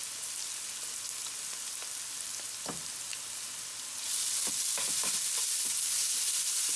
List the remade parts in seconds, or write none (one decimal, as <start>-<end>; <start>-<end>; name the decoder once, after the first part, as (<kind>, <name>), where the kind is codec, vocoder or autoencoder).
none